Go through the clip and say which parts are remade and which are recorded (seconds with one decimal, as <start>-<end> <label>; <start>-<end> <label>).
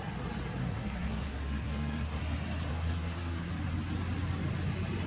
0.0-0.6 recorded; 0.6-2.2 remade; 2.2-2.7 recorded; 2.7-3.5 remade; 3.5-5.1 recorded